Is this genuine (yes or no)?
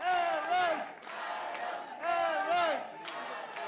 yes